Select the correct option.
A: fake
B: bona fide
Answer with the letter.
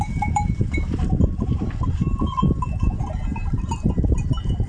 A